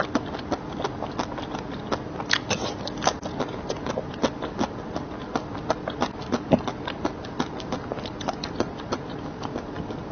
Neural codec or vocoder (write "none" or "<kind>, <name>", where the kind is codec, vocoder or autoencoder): none